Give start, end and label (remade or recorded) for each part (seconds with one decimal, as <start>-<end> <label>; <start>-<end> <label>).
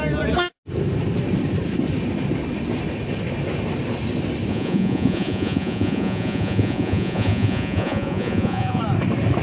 0.0-4.5 recorded; 4.5-8.8 remade; 8.8-9.4 recorded